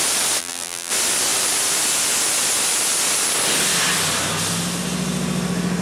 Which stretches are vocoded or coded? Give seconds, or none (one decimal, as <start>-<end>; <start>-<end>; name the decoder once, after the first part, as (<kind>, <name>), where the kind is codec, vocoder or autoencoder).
0.4-0.9 (vocoder, BigVGAN v2)